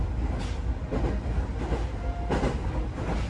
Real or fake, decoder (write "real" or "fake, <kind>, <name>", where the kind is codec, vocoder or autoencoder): real